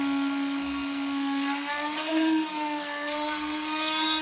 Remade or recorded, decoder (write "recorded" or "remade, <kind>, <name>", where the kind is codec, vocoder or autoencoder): remade, codec, SNAC